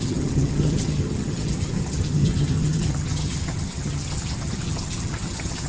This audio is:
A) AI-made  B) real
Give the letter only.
A